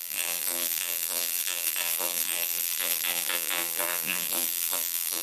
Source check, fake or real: fake